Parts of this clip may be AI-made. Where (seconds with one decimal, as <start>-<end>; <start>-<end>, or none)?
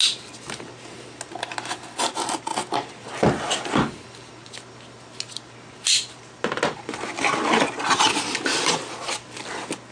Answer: none